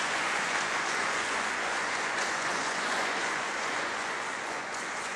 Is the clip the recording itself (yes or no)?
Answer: no